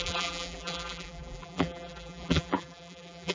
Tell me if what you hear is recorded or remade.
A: remade